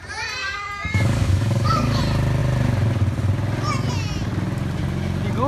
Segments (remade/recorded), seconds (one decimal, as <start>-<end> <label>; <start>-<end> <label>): 0.0-0.4 recorded; 0.4-2.0 remade; 2.0-5.5 recorded